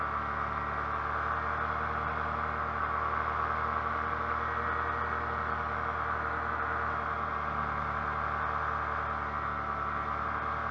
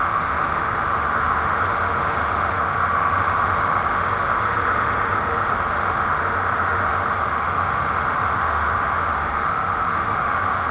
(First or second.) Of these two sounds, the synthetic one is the second